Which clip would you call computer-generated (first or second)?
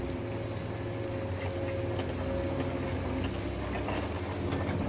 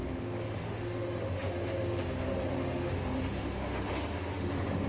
second